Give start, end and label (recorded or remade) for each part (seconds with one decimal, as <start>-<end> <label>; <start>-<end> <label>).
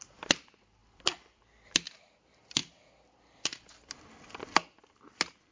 0.0-0.8 recorded; 0.8-1.4 remade; 1.4-2.6 recorded; 2.6-3.6 remade; 3.6-5.5 recorded